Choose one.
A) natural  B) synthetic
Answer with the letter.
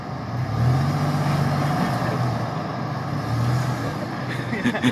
A